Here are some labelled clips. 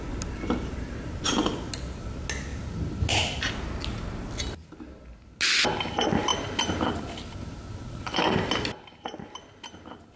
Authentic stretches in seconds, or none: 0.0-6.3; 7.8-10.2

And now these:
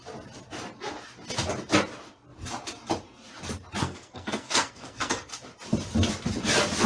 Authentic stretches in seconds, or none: 0.0-3.8; 5.3-6.9

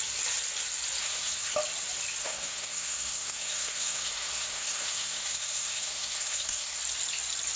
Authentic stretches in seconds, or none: 0.0-1.0; 1.5-2.2; 6.8-7.6

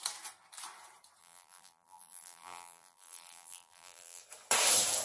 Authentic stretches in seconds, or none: 0.0-1.2; 4.2-5.0

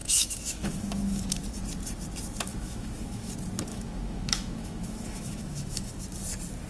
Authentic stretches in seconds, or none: 1.2-2.5; 3.3-3.7; 5.9-6.7

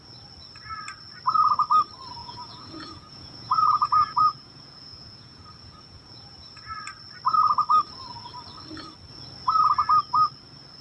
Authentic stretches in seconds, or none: 0.0-2.2; 6.7-10.8

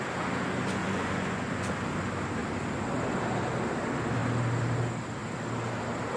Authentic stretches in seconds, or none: 0.0-0.8; 1.7-6.2